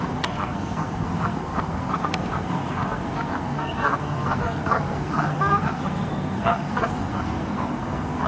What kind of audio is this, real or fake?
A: fake